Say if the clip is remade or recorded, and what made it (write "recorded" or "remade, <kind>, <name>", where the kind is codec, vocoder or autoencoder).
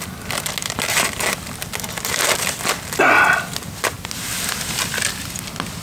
recorded